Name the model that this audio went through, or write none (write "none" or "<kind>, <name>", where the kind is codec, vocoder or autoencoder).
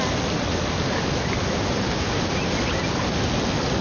none